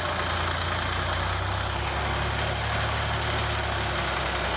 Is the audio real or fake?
real